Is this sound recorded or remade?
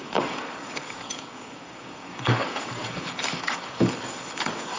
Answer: remade